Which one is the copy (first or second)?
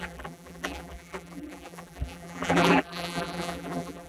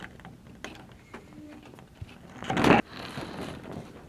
first